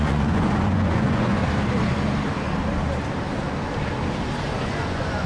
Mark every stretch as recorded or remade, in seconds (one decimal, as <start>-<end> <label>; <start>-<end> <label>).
0.0-1.4 remade; 1.4-4.6 recorded; 4.6-5.3 remade